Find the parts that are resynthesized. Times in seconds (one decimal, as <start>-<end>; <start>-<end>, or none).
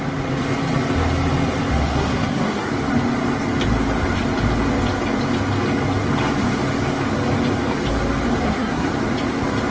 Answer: 1.8-2.7; 8.4-8.9